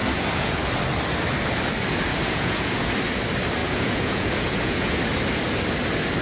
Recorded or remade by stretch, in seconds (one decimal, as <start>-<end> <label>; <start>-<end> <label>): 0.0-0.6 remade; 0.6-2.1 recorded; 2.1-2.9 remade; 2.9-3.6 recorded; 3.6-5.0 remade; 5.0-6.2 recorded